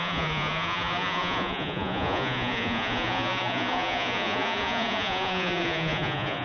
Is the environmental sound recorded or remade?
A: remade